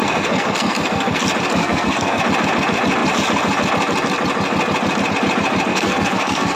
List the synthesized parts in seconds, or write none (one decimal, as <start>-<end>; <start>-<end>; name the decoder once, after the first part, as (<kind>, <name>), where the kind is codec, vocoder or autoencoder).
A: 0.0-1.2 (codec, SNAC); 1.6-2.2; 5.7-6.6